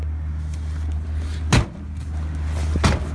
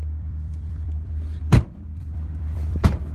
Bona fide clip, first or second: first